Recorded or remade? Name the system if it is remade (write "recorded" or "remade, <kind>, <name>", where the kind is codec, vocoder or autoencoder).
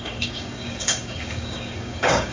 remade, codec, DAC